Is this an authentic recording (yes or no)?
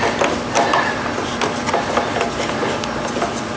yes